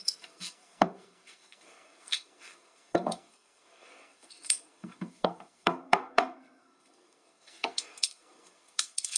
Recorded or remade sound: remade